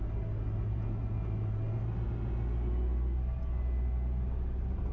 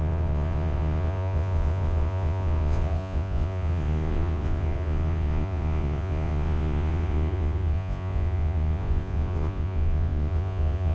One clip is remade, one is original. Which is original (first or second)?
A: first